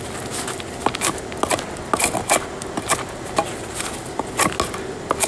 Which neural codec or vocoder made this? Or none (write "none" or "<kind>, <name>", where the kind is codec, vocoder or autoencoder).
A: none